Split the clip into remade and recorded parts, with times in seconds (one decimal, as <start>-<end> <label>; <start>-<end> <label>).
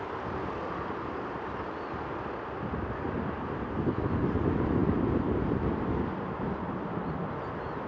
0.0-7.9 recorded